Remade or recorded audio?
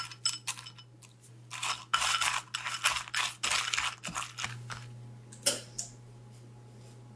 recorded